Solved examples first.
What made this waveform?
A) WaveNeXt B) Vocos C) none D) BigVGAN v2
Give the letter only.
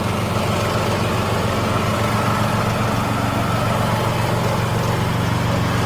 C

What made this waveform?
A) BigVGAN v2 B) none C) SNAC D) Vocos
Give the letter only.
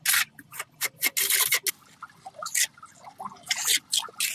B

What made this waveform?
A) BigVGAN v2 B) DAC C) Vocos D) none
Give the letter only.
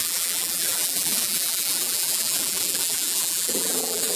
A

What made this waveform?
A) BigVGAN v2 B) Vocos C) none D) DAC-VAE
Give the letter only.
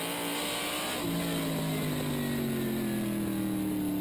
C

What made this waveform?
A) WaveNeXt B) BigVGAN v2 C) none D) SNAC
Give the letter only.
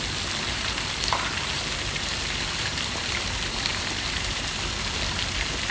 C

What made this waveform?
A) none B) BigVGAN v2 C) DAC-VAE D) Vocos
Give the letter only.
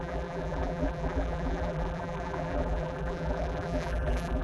B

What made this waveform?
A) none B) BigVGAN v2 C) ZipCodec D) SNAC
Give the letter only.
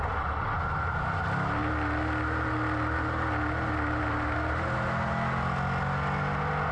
A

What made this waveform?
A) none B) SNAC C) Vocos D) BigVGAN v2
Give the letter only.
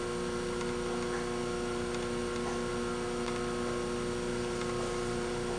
A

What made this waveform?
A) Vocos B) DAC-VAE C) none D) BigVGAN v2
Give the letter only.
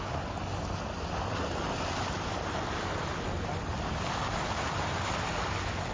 C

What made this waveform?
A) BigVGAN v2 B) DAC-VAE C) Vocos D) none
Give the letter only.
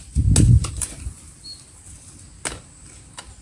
D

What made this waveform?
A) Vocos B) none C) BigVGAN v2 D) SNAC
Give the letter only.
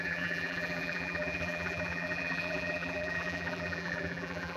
C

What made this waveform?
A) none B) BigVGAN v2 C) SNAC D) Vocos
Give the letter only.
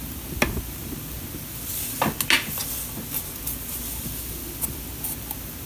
A